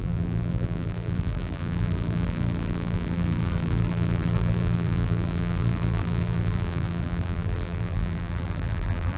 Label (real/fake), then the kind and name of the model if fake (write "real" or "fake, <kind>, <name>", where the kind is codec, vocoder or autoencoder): fake, vocoder, BigVGAN v2